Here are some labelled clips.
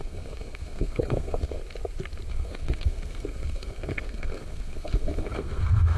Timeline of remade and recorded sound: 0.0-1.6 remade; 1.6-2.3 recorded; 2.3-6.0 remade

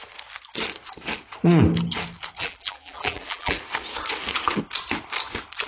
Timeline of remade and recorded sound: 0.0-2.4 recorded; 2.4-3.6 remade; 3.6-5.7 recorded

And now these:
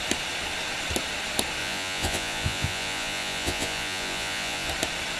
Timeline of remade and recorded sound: 0.0-1.6 recorded; 1.6-4.7 remade; 4.7-5.2 recorded

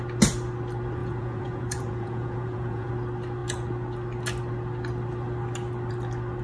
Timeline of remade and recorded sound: 0.0-1.0 recorded; 1.0-2.9 remade; 2.9-6.4 recorded

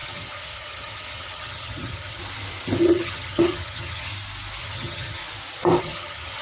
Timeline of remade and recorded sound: 0.0-2.2 remade; 2.2-2.8 recorded; 2.8-4.1 remade; 4.1-4.6 recorded; 4.6-5.2 remade; 5.2-5.8 recorded; 5.8-6.4 remade

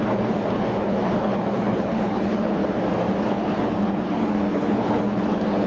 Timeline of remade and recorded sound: 0.0-2.6 remade; 2.6-3.2 recorded; 3.2-5.7 remade